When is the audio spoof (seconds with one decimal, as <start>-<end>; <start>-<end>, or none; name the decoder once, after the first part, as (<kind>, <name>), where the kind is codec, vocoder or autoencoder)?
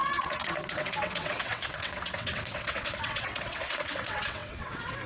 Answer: 0.0-5.1 (vocoder, WaveNeXt)